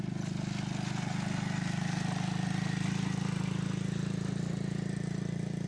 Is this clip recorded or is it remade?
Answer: recorded